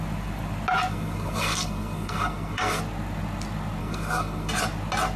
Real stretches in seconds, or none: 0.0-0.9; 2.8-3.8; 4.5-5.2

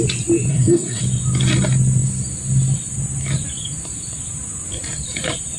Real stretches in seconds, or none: 0.0-0.5; 1.0-5.6

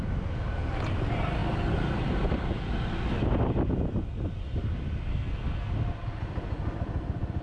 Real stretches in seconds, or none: 0.0-5.1; 5.7-7.4